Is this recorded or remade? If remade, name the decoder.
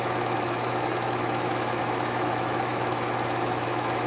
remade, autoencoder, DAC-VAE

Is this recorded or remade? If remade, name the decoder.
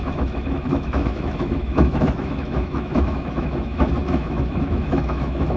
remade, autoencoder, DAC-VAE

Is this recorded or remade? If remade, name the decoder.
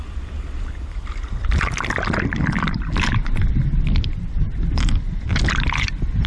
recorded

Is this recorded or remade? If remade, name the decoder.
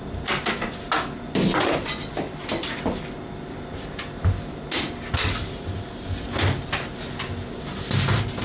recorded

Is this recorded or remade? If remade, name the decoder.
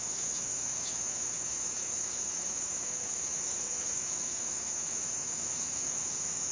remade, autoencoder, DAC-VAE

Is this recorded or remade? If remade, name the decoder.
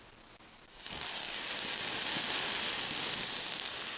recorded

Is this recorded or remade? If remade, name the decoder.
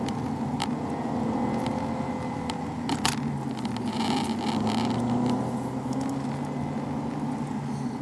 recorded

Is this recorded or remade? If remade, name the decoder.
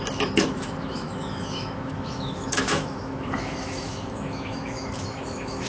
remade, autoencoder, DAC-VAE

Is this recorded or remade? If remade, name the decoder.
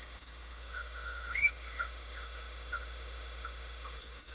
remade, autoencoder, DAC-VAE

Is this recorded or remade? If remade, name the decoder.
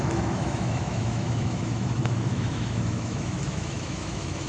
remade, autoencoder, DAC-VAE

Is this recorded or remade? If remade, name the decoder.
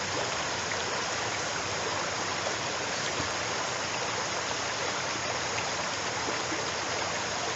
recorded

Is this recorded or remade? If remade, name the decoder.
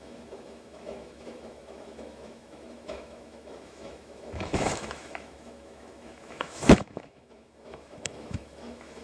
remade, autoencoder, DAC-VAE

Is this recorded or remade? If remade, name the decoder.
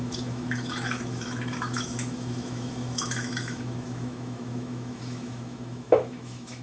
remade, autoencoder, DAC-VAE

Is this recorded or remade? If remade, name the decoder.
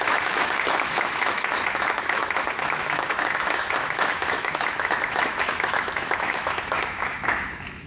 remade, autoencoder, DAC-VAE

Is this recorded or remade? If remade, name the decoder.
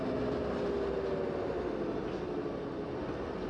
recorded